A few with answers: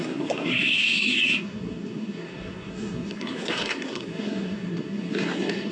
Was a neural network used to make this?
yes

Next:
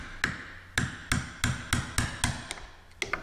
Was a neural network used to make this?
no